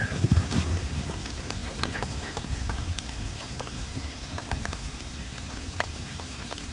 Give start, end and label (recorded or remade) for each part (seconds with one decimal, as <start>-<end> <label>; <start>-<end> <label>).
0.0-6.7 remade